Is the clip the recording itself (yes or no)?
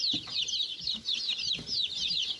yes